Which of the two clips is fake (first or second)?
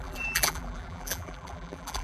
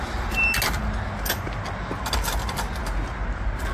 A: first